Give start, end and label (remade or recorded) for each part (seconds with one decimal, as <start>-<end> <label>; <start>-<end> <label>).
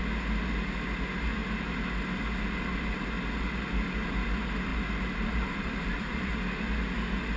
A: 0.0-4.7 recorded; 4.7-6.3 remade; 6.3-7.4 recorded